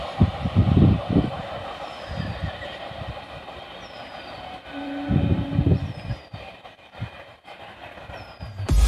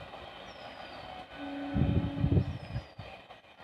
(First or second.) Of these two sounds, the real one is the second